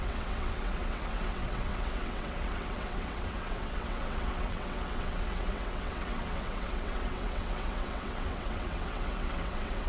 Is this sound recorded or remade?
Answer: remade